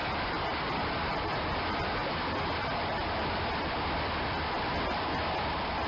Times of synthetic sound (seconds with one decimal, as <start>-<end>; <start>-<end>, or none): none